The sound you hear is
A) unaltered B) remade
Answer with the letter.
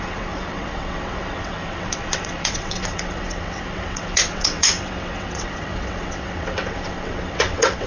B